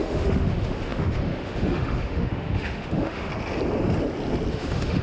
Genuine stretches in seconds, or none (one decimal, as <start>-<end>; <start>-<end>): 3.3-4.5